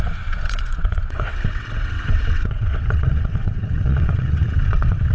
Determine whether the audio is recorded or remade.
remade